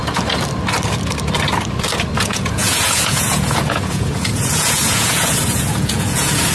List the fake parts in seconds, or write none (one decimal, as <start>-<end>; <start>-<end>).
2.2-6.5